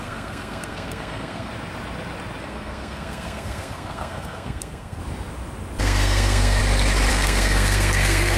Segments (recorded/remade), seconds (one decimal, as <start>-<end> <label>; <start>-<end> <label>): 0.0-1.5 remade; 1.5-2.4 recorded; 2.4-5.0 remade; 5.0-5.8 recorded; 5.8-6.6 remade; 6.6-7.1 recorded; 7.1-8.4 remade